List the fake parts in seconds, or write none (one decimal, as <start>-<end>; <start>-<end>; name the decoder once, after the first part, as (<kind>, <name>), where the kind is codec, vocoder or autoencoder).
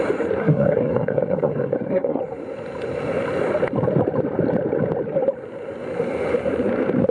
0.4-2.2 (codec, SNAC)